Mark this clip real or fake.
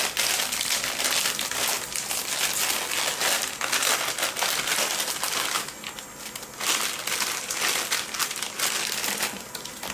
real